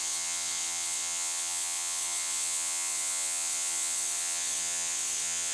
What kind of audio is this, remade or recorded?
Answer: remade